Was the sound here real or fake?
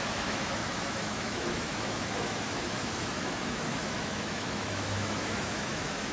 fake